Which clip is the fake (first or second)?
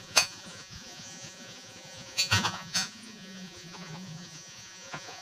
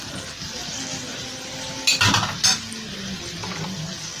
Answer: first